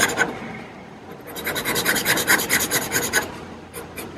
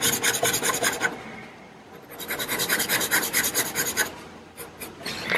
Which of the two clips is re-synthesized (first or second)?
first